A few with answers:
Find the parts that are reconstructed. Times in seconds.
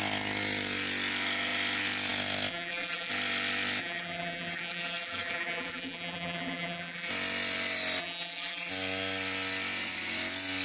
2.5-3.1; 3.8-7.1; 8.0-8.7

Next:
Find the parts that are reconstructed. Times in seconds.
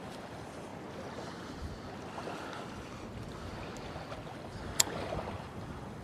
0.0-0.7; 4.3-6.0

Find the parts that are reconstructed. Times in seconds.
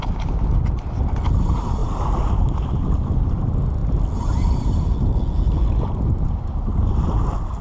none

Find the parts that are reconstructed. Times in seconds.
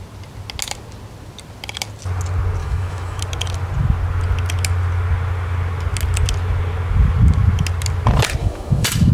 2.6-3.2; 8.4-9.1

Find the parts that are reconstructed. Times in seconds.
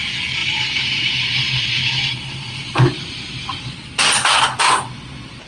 0.4-3.7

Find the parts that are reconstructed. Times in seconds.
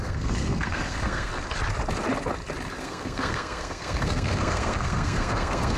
0.0-1.3; 2.8-5.8